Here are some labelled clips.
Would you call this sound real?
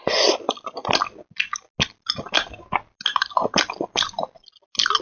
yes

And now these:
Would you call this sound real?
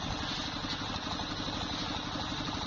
yes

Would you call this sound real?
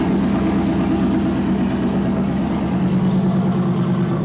yes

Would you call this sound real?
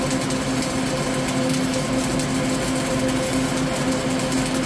yes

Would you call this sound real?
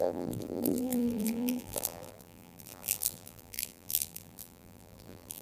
no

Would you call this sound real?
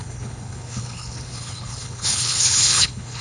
no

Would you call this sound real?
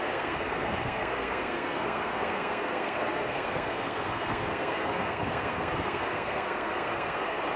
no